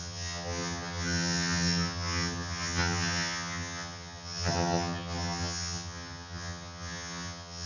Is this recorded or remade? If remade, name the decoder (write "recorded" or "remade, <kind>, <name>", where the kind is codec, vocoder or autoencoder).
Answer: remade, vocoder, HiFi-GAN